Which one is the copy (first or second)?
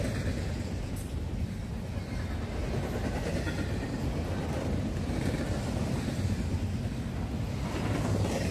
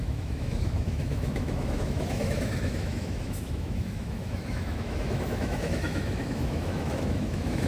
second